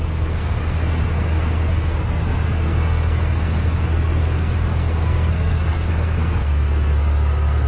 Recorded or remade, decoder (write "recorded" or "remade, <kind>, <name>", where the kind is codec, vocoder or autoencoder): remade, codec, SNAC